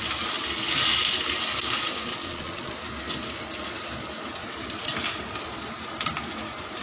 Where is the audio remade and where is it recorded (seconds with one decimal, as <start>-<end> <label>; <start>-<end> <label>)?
0.0-2.1 recorded; 2.1-2.7 remade; 2.7-6.8 recorded